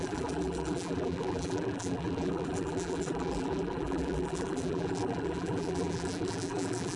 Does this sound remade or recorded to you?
remade